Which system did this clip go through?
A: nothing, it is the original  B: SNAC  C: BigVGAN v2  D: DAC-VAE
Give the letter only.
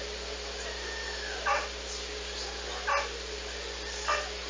A